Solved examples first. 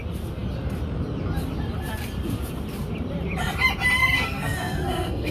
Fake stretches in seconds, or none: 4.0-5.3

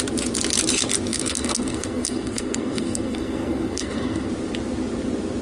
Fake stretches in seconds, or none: 1.1-4.3

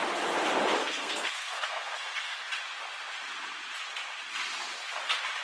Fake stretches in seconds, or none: 0.8-2.4

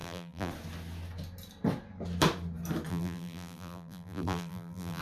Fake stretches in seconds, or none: 0.0-0.5; 2.9-5.0